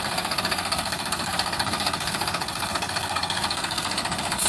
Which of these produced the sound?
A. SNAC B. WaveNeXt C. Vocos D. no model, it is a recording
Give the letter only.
A